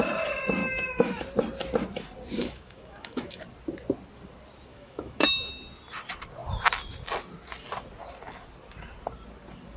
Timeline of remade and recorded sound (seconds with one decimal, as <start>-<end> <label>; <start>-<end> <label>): 0.0-0.6 recorded; 0.6-1.2 remade; 1.2-2.4 recorded; 2.4-3.4 remade; 3.4-4.7 recorded; 4.7-5.5 remade; 5.5-9.8 recorded